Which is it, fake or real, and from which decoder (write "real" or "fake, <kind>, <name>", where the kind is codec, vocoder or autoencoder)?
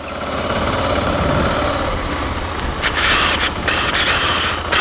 real